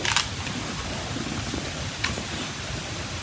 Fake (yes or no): no